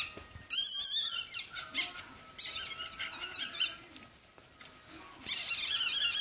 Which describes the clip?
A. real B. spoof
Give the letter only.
A